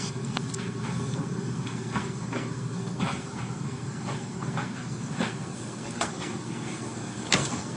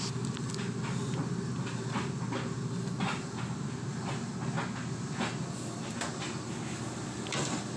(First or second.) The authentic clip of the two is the second